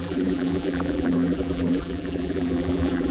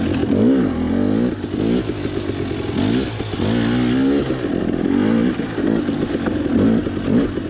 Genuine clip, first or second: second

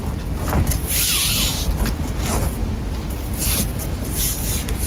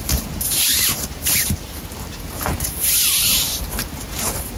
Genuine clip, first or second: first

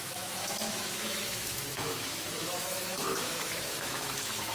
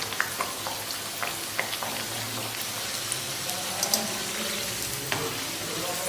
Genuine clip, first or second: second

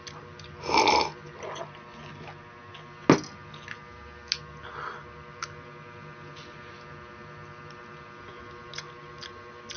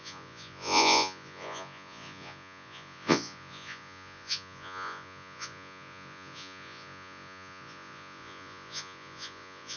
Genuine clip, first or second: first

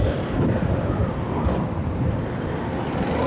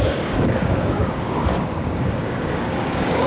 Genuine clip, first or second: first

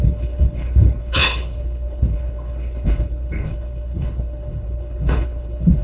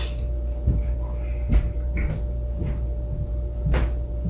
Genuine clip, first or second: second